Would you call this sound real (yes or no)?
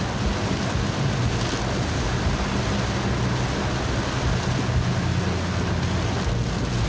yes